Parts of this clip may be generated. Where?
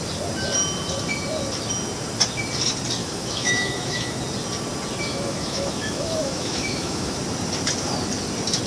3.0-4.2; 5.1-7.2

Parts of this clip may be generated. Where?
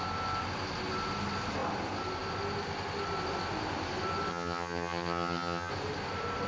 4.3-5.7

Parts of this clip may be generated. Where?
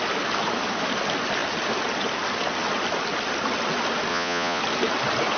4.1-4.6